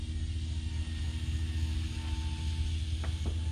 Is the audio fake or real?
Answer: real